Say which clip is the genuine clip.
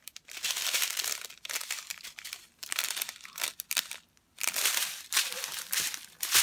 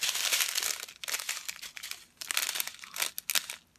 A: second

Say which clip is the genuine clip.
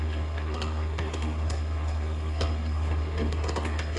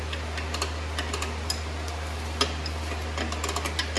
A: second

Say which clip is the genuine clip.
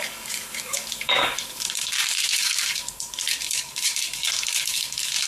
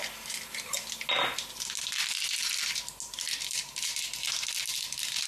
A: second